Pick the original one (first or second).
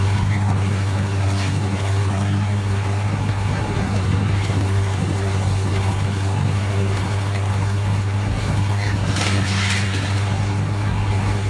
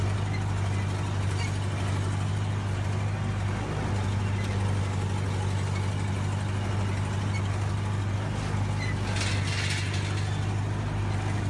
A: second